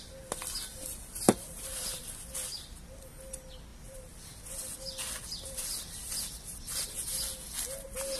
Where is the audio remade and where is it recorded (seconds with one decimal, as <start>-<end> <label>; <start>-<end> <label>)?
0.0-0.7 recorded; 0.7-2.0 remade; 2.0-8.2 recorded